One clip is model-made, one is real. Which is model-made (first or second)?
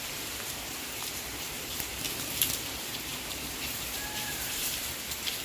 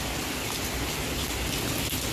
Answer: first